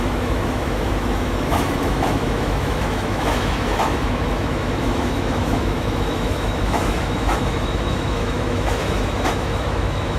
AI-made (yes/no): yes